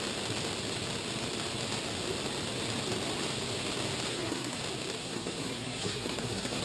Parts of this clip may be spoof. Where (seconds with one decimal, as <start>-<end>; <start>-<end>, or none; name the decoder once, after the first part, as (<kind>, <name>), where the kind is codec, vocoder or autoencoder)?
4.1-4.6 (codec, SNAC); 5.0-6.6